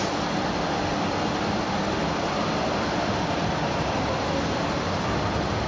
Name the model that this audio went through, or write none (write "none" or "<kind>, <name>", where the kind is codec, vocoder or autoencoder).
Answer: none